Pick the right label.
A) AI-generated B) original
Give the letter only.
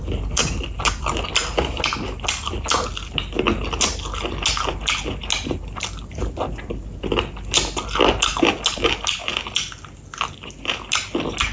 B